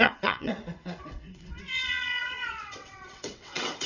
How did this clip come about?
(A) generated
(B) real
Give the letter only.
A